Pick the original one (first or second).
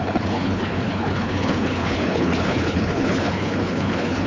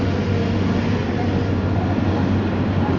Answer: second